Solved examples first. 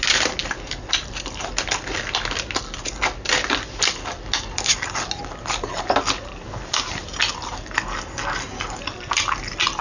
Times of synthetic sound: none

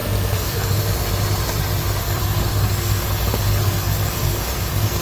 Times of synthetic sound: 0.0-0.8 (codec, SNAC); 2.0-5.0

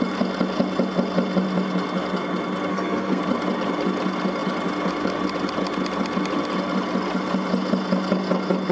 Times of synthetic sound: 2.7-3.2 (codec, SNAC)